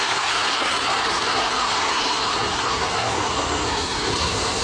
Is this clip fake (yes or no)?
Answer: yes